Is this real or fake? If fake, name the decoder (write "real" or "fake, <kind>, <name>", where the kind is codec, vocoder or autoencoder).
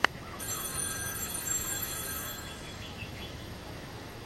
fake, autoencoder, DAC-VAE